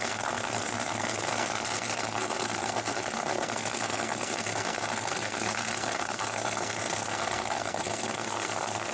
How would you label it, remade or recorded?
remade